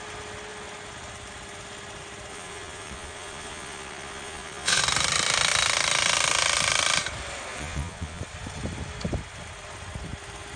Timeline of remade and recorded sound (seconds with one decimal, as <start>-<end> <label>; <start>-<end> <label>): 0.0-2.3 recorded; 2.3-4.8 remade; 4.8-7.5 recorded; 7.5-8.2 remade; 8.2-10.6 recorded